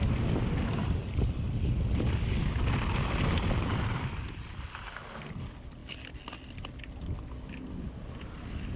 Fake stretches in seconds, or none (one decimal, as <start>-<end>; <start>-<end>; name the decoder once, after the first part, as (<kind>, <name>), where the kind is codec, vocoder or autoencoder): none